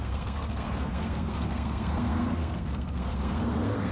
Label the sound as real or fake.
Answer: fake